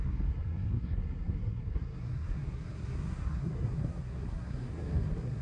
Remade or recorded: remade